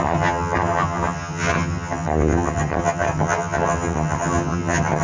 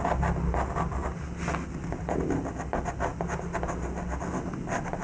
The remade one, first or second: first